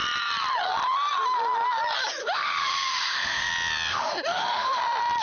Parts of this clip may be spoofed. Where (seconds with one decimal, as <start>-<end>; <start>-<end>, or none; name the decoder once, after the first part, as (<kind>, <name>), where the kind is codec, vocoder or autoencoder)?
2.2-3.5 (autoencoder, DAC-VAE); 3.9-4.8